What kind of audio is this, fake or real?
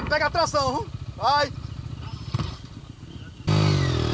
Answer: real